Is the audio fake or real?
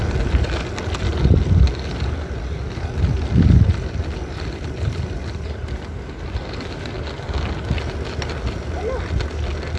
real